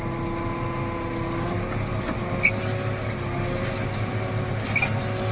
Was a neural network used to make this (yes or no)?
no